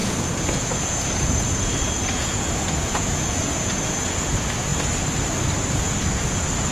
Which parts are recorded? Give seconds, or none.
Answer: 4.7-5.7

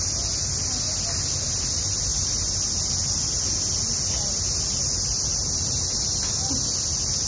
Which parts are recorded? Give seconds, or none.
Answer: 0.0-7.3

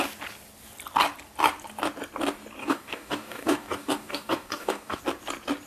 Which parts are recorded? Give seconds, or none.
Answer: 0.0-2.6; 5.0-5.7

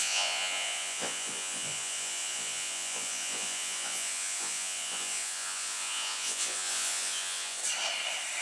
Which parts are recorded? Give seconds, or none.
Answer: 7.6-8.4

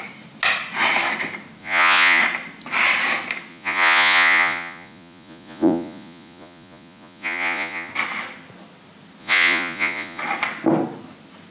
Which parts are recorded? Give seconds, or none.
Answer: 0.0-1.6; 2.2-3.5; 7.9-9.2; 10.2-11.5

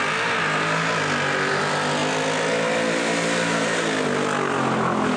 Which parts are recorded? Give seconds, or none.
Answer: 0.0-5.2